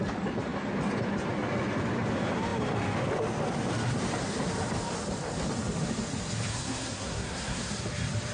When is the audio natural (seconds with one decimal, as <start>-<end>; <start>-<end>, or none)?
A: 0.0-6.5; 7.7-8.3